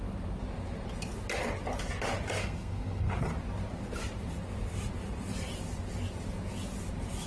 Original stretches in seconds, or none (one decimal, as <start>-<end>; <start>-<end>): 0.0-2.4; 3.1-7.3

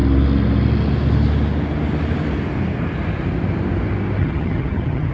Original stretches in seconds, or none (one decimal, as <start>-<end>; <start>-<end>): 0.0-4.2

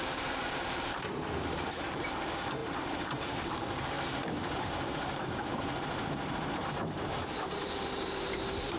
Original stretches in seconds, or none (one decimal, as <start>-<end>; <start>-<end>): none

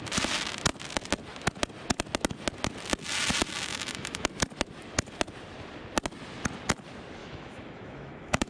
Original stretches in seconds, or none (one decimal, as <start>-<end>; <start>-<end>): 0.0-3.7; 4.3-7.2